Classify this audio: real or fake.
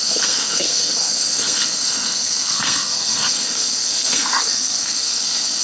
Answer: fake